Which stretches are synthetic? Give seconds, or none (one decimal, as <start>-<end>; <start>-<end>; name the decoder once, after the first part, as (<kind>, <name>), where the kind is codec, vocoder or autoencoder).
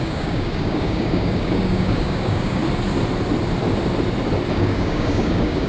0.0-2.6 (codec, DAC); 4.5-5.7